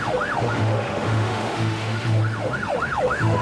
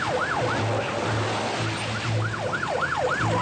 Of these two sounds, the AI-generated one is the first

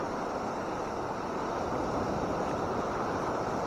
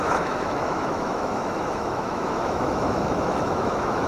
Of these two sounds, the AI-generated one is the second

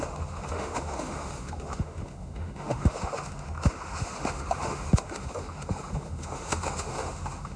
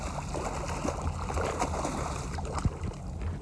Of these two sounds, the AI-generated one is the first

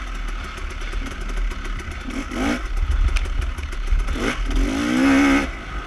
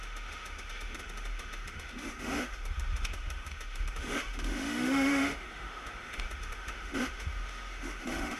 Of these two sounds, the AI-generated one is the second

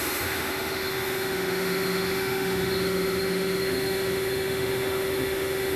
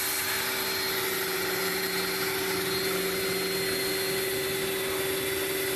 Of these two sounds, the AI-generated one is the first